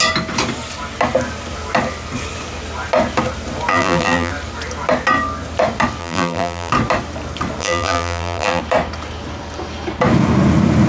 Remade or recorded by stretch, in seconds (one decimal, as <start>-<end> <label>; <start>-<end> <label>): 0.0-3.7 recorded; 3.7-4.3 remade; 4.3-6.0 recorded; 6.0-6.7 remade; 6.7-7.6 recorded; 7.6-8.6 remade; 8.6-10.9 recorded